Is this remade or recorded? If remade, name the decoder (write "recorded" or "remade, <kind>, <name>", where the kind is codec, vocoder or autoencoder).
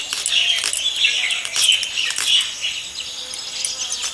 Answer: recorded